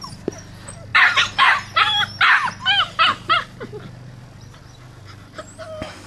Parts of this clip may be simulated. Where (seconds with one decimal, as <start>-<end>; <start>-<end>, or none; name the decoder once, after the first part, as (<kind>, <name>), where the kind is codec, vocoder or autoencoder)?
none